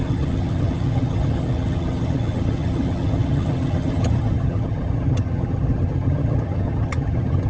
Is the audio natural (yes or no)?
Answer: no